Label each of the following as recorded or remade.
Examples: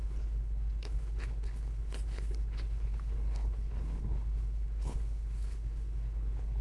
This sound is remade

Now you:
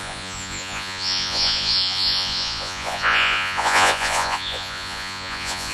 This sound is remade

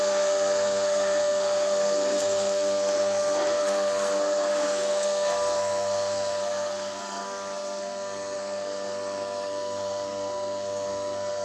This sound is remade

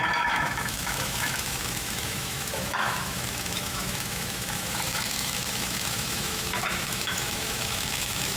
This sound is remade